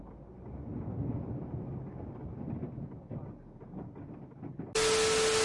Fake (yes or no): no